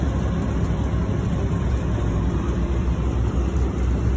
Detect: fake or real real